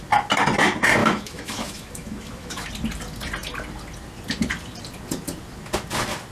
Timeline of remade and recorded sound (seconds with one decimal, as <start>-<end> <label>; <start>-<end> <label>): 0.0-1.0 recorded; 1.0-2.7 remade; 2.7-6.3 recorded